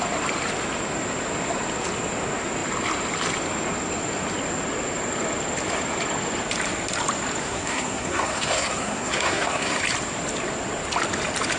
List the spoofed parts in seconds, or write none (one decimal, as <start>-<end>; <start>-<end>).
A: 7.4-9.8